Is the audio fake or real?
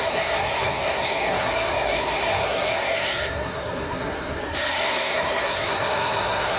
fake